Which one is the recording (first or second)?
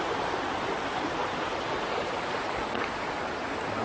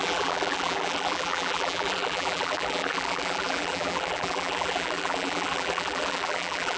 first